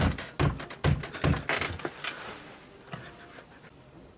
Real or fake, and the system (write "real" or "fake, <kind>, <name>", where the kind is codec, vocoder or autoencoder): real